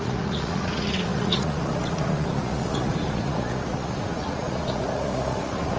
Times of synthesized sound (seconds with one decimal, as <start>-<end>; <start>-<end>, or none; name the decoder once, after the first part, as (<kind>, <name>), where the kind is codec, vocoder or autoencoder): 0.0-5.8 (vocoder, Vocos)